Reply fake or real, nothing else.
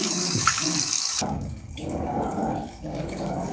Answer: fake